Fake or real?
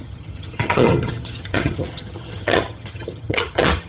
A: fake